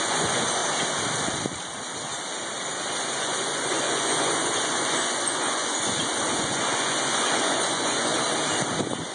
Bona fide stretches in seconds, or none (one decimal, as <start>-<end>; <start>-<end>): 0.6-3.0; 8.1-9.1